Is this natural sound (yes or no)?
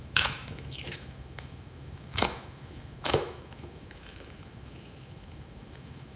no